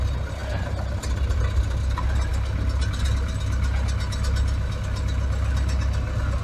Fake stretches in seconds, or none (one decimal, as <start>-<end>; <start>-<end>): none